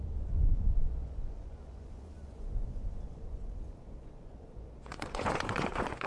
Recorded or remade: remade